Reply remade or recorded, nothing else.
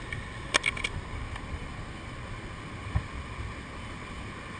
recorded